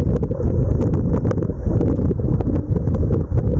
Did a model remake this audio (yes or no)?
no